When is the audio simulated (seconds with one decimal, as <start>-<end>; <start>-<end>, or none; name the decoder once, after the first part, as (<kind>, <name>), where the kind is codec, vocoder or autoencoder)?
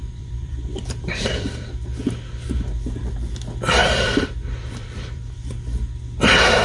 0.0-1.8 (vocoder, BigVGAN v2); 3.8-5.5